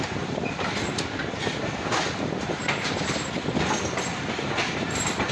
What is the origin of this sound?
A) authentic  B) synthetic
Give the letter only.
B